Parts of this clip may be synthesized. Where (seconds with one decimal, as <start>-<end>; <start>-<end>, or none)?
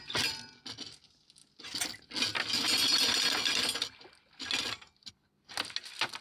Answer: none